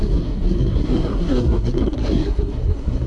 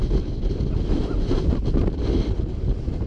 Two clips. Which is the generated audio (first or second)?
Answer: first